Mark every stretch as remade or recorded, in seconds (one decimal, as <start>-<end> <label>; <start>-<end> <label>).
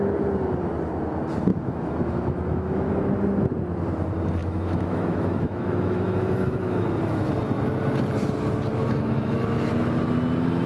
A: 0.0-1.5 recorded; 1.5-2.9 remade; 2.9-4.4 recorded; 4.4-7.3 remade; 7.3-8.8 recorded; 8.8-9.7 remade; 9.7-10.7 recorded